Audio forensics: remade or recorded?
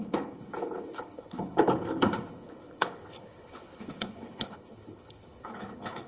remade